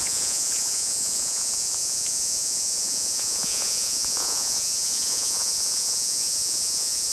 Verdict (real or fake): fake